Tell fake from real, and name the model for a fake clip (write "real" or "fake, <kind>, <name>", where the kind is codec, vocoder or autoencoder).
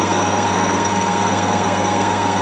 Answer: fake, codec, SNAC